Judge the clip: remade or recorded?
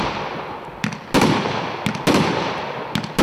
recorded